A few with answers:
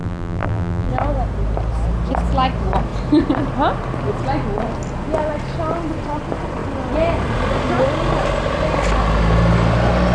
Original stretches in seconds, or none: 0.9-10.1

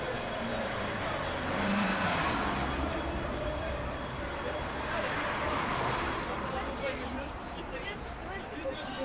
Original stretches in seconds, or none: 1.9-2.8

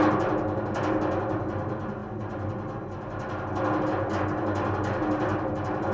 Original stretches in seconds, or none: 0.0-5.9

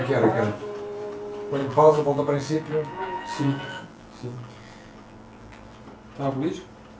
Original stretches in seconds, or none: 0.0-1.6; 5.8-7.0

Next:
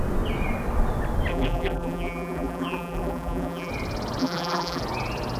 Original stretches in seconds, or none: 0.0-1.3; 3.7-4.2; 4.8-5.4

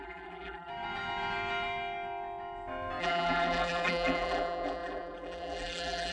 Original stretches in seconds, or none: 0.7-3.0

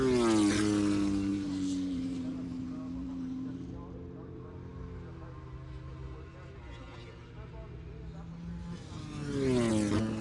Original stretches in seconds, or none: 0.0-1.3; 3.5-10.2

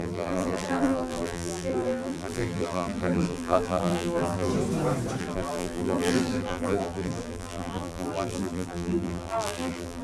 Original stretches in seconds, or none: 4.5-5.2